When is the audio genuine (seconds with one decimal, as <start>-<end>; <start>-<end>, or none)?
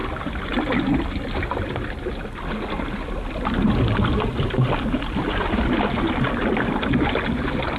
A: 0.0-7.8